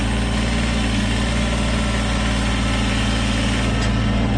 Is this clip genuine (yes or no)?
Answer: yes